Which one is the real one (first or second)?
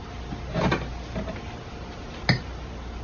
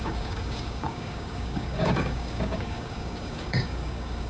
first